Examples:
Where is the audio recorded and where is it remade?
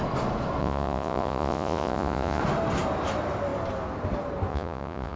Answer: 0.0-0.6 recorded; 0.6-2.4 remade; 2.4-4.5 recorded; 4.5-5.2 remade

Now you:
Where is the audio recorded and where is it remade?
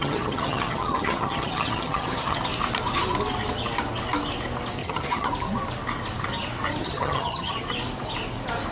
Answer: 0.0-2.4 remade; 2.4-4.8 recorded; 4.8-5.3 remade; 5.3-6.8 recorded; 6.8-7.5 remade; 7.5-8.7 recorded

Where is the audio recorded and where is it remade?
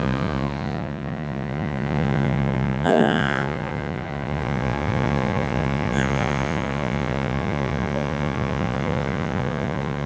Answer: 0.0-10.1 remade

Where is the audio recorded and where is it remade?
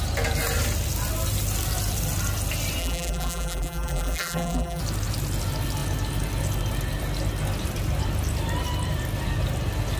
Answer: 0.0-2.8 recorded; 2.8-4.8 remade; 4.8-10.0 recorded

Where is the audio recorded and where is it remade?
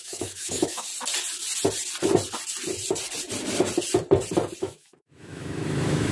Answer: 0.0-0.9 remade; 0.9-4.6 recorded; 4.6-6.1 remade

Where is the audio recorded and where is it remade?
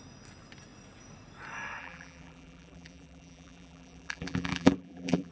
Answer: 0.0-1.8 recorded; 1.8-5.3 remade